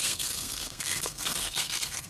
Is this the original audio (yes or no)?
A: no